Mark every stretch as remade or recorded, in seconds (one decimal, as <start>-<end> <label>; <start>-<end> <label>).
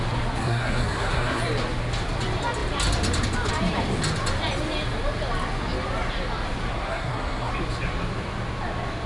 0.0-0.4 recorded; 0.4-1.4 remade; 1.4-6.9 recorded; 6.9-7.5 remade; 7.5-9.1 recorded